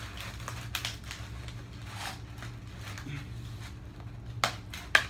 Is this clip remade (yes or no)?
no